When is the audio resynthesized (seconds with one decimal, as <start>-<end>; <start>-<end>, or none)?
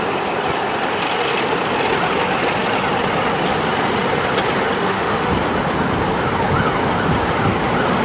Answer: 4.8-5.3